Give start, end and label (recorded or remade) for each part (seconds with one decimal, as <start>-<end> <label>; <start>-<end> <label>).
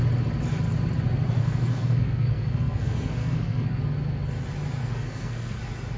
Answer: 0.0-1.4 recorded; 1.4-3.8 remade; 3.8-4.8 recorded; 4.8-5.6 remade; 5.6-6.0 recorded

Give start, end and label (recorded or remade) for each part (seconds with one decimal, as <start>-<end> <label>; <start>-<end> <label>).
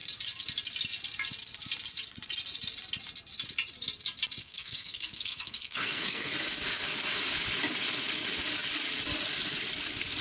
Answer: 0.0-4.4 recorded; 4.4-6.3 remade; 6.3-10.2 recorded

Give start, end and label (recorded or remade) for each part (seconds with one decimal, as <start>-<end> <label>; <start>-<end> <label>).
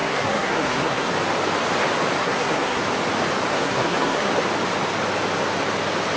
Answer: 0.0-1.1 remade; 1.1-2.2 recorded; 2.2-2.8 remade; 2.8-3.5 recorded; 3.5-4.3 remade; 4.3-6.2 recorded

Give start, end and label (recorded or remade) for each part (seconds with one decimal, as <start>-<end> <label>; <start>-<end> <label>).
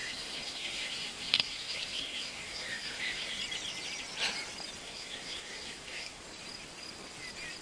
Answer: 0.0-3.4 remade; 3.4-4.8 recorded; 4.8-6.2 remade; 6.2-7.6 recorded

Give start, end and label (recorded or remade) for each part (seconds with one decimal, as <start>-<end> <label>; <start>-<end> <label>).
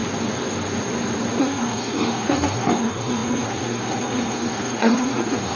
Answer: 0.0-1.4 recorded; 1.4-5.6 remade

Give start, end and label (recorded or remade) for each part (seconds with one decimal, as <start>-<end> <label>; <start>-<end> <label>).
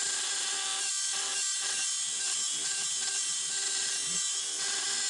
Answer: 0.0-5.1 recorded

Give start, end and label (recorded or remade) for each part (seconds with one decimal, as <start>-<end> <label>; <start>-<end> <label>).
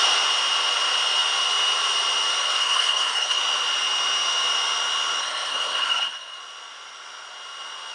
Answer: 0.0-2.4 recorded; 2.4-3.4 remade; 3.4-5.2 recorded; 5.2-6.4 remade; 6.4-7.9 recorded